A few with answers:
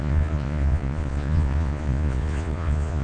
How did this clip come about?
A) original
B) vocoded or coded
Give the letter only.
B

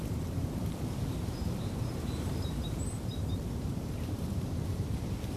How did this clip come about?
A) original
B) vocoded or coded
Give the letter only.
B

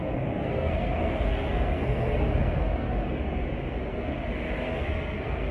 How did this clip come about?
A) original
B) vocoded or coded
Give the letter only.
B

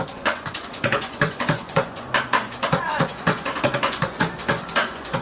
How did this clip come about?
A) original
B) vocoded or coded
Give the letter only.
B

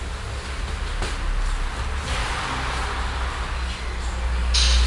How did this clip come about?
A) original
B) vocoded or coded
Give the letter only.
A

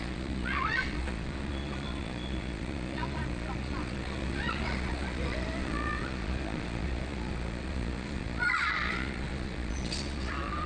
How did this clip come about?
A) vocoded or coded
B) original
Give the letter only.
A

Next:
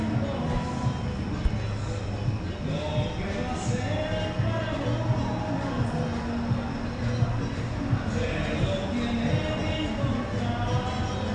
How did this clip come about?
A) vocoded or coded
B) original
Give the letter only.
B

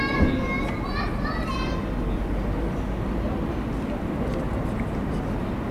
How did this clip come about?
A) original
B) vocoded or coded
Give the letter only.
A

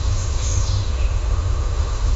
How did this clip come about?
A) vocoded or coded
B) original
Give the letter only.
A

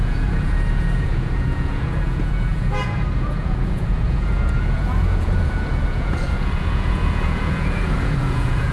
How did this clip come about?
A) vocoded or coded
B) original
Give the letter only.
A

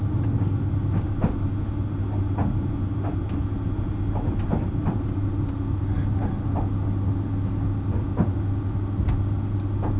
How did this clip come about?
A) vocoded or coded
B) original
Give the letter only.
B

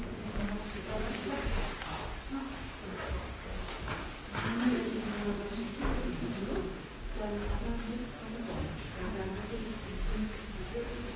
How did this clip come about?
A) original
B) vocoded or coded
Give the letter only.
B